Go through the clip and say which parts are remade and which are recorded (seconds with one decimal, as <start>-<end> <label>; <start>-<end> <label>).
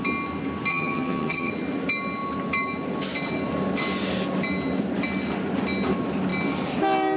0.0-0.7 recorded; 0.7-1.5 remade; 1.5-7.2 recorded